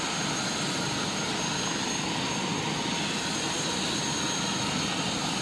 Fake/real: real